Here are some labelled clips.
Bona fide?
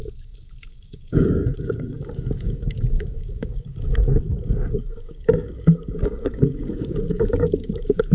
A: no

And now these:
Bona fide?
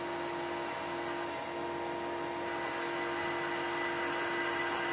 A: yes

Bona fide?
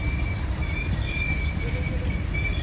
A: yes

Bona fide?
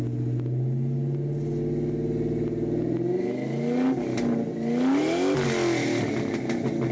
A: yes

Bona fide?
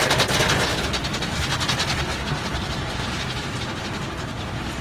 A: yes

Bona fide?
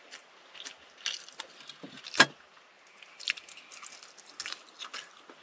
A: yes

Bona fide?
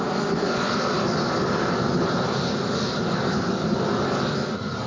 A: yes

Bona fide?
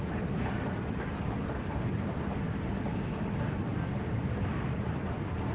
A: yes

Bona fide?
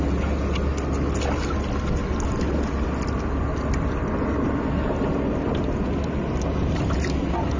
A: yes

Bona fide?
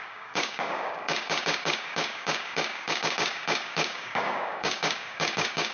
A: no